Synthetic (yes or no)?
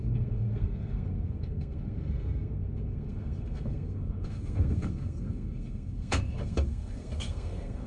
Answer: yes